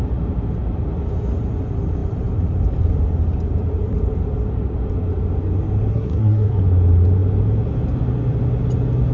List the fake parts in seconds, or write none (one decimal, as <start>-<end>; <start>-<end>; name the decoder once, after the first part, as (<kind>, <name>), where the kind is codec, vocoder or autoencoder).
5.9-6.6 (codec, SNAC)